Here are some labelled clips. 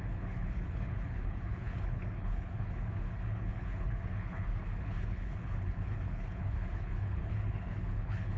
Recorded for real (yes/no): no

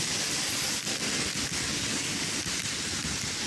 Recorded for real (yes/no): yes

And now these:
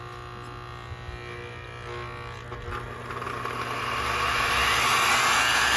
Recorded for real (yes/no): yes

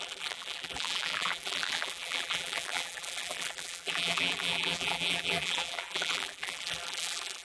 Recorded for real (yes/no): no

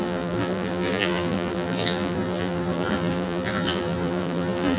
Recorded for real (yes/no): no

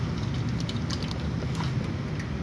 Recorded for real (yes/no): yes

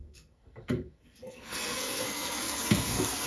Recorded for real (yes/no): no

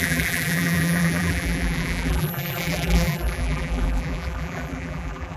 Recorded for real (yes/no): no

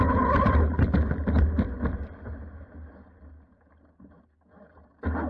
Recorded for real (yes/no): yes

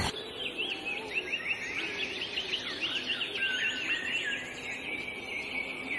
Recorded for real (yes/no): yes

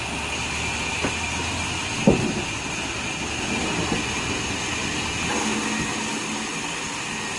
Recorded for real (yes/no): yes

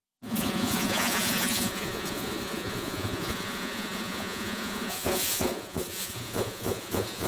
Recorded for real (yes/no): no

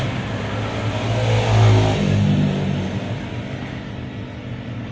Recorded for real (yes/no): yes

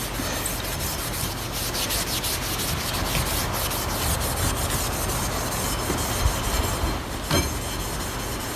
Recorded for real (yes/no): yes